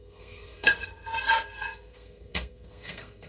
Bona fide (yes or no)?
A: no